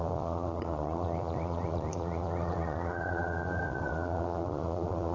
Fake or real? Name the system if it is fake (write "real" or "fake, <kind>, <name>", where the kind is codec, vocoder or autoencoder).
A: fake, vocoder, Vocos